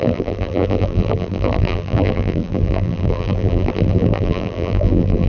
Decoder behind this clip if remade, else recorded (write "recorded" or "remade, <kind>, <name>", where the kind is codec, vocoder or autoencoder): remade, vocoder, BigVGAN v2